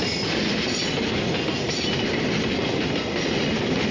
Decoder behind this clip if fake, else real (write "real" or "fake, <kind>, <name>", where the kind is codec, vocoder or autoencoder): real